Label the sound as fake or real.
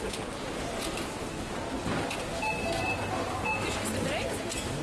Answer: real